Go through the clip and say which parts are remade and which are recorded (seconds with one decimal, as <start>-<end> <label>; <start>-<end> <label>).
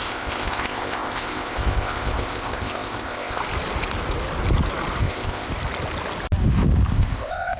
0.0-3.4 remade; 3.4-5.0 recorded; 5.0-5.5 remade; 5.5-6.9 recorded; 6.9-7.6 remade